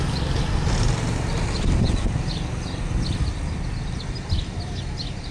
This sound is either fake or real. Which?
real